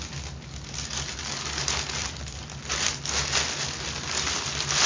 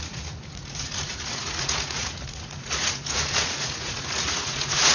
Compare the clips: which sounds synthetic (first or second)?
second